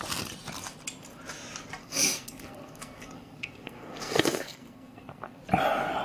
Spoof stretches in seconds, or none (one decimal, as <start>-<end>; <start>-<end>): 1.8-5.4